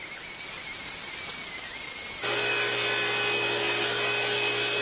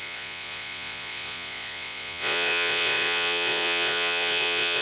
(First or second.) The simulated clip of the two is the second